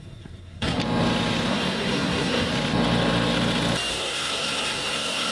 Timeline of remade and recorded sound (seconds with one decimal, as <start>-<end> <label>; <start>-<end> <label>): 0.0-0.8 remade; 0.8-1.5 recorded; 1.5-2.5 remade; 2.5-3.9 recorded; 3.9-5.3 remade